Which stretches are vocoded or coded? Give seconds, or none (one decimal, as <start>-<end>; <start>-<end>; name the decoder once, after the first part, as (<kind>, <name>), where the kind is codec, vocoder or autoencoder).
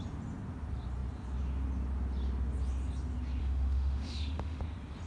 3.4-4.6 (autoencoder, DAC-VAE)